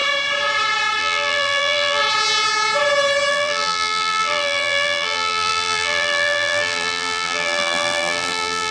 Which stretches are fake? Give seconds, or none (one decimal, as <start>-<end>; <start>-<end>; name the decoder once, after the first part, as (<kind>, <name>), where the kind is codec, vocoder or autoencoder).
1.0-2.0 (vocoder, BigVGAN v2); 3.3-8.7